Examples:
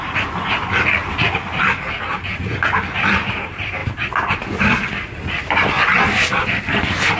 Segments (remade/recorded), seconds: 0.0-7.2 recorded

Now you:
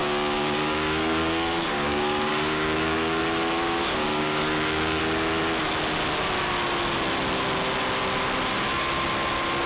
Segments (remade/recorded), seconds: 0.0-3.2 remade; 3.2-3.8 recorded; 3.8-5.0 remade; 5.0-9.7 recorded